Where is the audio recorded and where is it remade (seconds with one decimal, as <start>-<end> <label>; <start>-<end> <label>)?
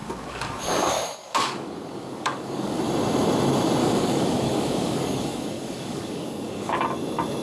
0.0-2.8 remade; 2.8-3.8 recorded; 3.8-6.8 remade; 6.8-7.4 recorded